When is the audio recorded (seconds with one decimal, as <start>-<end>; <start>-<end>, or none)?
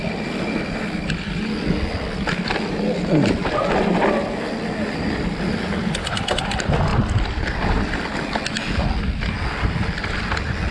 0.0-10.7